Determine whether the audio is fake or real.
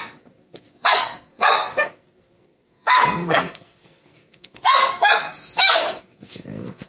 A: fake